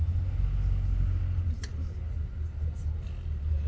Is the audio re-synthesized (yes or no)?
no